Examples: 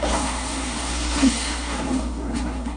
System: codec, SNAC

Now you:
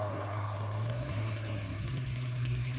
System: codec, SNAC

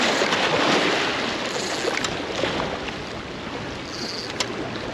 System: none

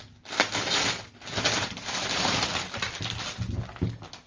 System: none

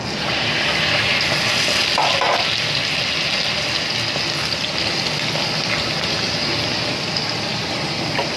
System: none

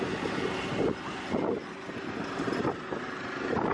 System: none